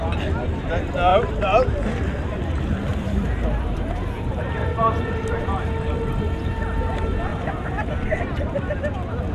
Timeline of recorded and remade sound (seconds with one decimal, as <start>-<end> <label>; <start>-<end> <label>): 0.0-1.1 recorded; 1.1-1.9 remade; 1.9-2.9 recorded; 2.9-6.6 remade; 6.6-7.3 recorded; 7.3-7.9 remade; 7.9-9.3 recorded